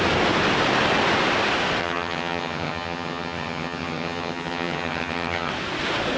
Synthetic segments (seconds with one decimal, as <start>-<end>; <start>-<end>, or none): 1.8-5.5